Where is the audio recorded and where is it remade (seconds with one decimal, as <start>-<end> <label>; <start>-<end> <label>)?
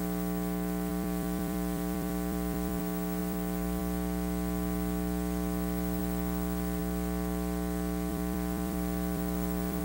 0.0-0.9 recorded; 0.9-2.8 remade; 2.8-3.2 recorded; 3.2-3.8 remade; 3.8-8.1 recorded; 8.1-9.8 remade